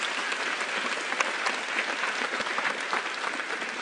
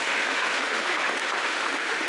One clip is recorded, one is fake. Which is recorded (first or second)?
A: first